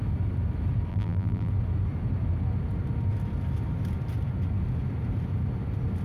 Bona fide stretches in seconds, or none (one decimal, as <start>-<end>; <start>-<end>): 0.0-0.9; 1.5-6.0